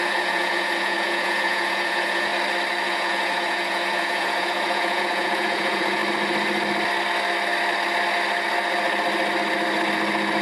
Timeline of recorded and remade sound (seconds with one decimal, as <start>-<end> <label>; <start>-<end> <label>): 0.0-2.3 remade; 2.3-2.8 recorded; 2.8-6.0 remade; 6.0-10.4 recorded